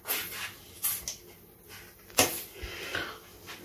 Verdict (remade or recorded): recorded